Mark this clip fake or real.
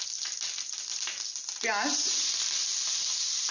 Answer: real